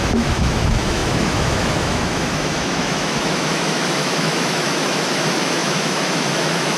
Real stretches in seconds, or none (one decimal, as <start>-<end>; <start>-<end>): none